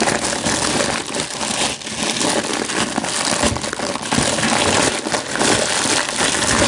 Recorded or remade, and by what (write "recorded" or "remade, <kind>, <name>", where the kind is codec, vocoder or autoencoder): recorded